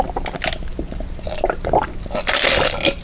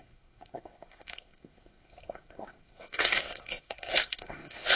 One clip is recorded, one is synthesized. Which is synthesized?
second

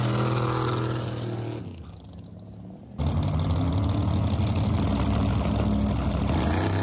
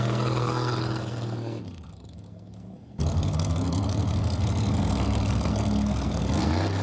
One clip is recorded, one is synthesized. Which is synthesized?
second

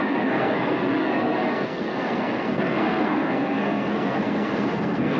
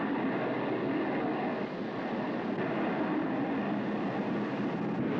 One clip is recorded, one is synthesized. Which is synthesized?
first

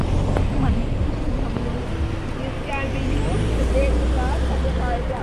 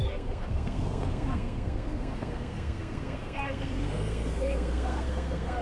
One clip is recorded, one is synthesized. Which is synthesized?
second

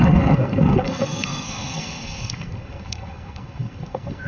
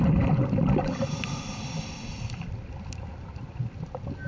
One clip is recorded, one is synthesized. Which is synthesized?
first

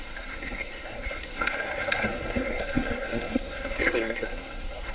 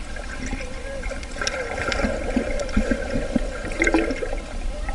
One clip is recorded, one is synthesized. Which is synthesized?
first